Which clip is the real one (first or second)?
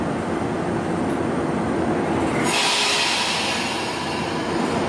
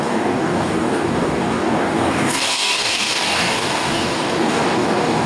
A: first